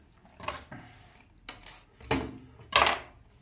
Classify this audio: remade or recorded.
recorded